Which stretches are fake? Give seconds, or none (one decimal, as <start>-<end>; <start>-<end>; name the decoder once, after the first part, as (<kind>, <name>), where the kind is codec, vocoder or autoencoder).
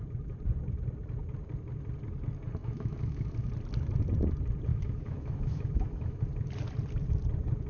2.6-3.5 (autoencoder, DAC-VAE); 4.7-6.2